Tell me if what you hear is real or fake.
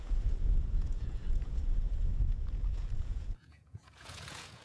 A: fake